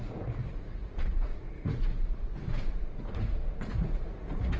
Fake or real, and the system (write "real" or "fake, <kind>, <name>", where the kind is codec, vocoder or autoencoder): fake, vocoder, Vocos